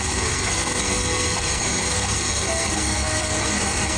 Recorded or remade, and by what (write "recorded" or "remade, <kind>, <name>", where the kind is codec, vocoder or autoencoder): remade, codec, SNAC